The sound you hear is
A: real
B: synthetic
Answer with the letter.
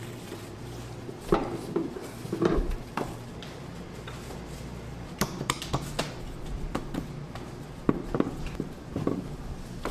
A